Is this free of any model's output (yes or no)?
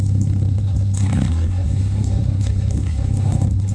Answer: no